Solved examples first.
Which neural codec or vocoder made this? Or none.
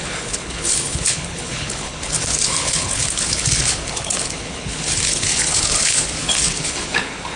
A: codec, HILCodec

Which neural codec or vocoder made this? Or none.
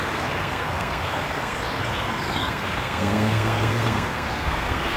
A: codec, SNAC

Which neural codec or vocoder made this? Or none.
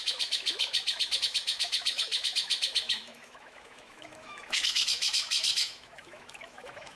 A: autoencoder, DAC-VAE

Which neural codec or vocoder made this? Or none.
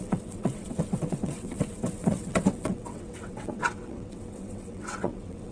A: vocoder, WaveNeXt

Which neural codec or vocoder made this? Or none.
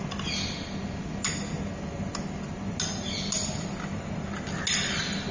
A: none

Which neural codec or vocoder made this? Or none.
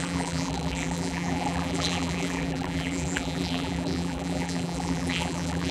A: vocoder, BigVGAN v2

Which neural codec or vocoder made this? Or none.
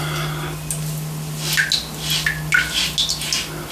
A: none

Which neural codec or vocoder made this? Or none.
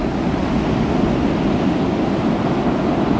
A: none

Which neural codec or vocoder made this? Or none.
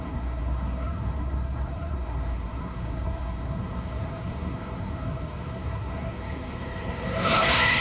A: codec, SNAC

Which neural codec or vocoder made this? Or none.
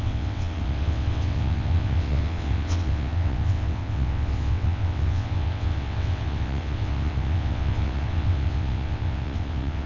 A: vocoder, WaveNeXt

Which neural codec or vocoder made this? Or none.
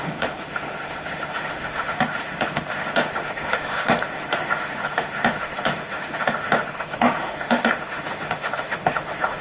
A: autoencoder, DAC-VAE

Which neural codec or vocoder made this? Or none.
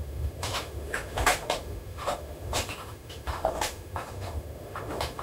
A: autoencoder, DAC-VAE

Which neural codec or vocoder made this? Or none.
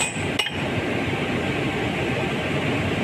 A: none